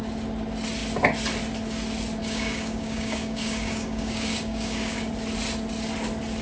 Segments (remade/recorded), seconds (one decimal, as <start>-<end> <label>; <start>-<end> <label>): 0.0-2.2 recorded; 2.2-5.1 remade; 5.1-6.4 recorded